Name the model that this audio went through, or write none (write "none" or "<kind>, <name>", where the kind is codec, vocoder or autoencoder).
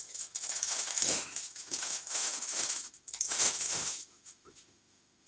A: autoencoder, DAC-VAE